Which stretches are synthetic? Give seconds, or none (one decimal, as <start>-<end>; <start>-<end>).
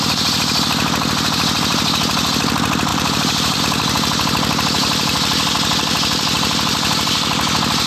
2.9-3.6; 4.8-5.4